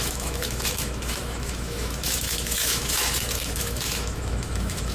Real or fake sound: fake